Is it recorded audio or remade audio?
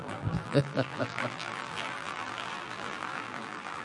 remade